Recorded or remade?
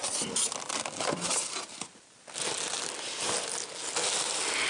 recorded